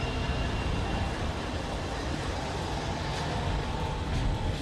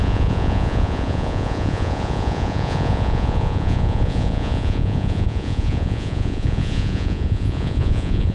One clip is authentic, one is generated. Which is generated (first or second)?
second